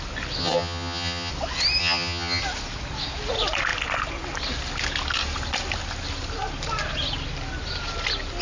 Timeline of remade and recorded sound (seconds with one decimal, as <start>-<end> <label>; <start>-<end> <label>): 0.0-0.4 recorded; 0.4-1.3 remade; 1.3-1.8 recorded; 1.8-2.4 remade; 2.4-8.4 recorded